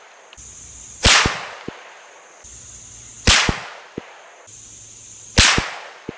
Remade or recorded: recorded